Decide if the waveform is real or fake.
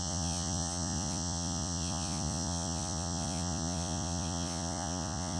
fake